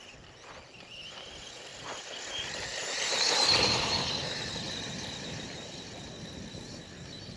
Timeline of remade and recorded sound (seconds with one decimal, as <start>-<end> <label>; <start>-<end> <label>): 0.0-1.7 recorded; 1.7-6.1 remade; 6.1-7.4 recorded